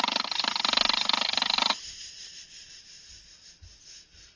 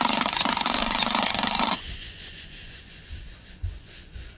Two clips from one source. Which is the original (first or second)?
first